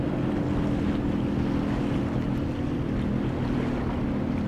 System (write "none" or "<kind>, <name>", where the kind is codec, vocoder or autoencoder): none